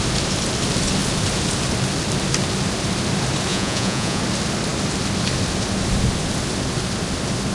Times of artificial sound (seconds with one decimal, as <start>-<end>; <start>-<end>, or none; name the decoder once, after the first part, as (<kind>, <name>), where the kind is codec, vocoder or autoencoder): 3.5-4.2 (vocoder, Vocos)